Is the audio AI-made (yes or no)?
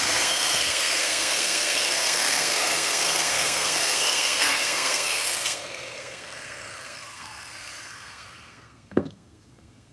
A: yes